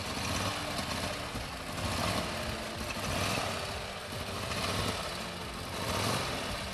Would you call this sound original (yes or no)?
yes